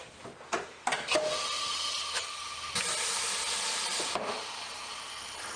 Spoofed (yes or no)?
no